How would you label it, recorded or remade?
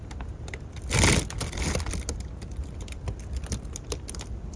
recorded